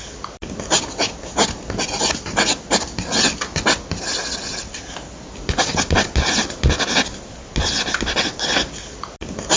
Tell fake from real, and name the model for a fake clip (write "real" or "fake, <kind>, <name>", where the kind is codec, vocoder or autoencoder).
real